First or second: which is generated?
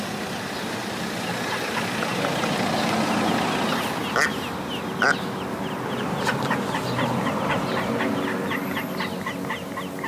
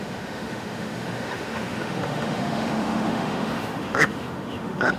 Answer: second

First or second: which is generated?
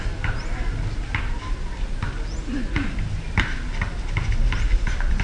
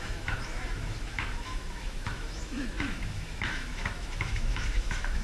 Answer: second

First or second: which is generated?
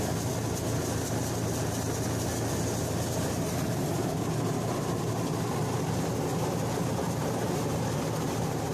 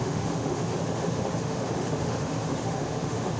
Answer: second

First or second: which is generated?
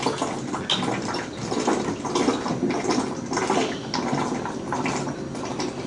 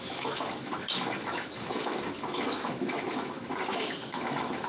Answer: second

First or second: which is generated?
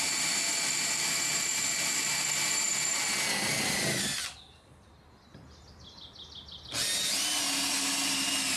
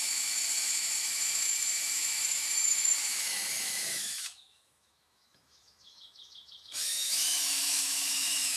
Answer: second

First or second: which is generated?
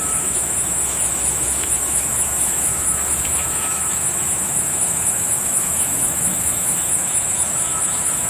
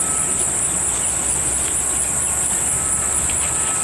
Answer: first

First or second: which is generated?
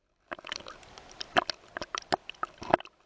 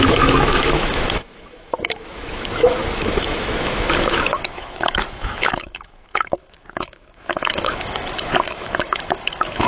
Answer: second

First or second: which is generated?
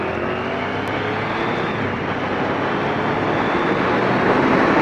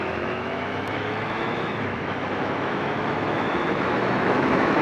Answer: second